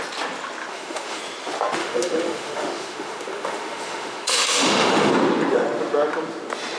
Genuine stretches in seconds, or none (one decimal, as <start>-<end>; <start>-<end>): 0.0-0.7; 1.2-1.8; 5.1-6.8